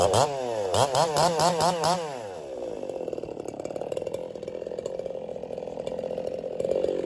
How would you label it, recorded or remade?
recorded